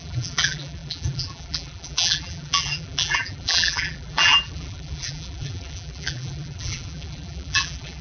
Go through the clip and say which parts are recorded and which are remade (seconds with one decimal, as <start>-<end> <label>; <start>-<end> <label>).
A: 0.0-8.0 remade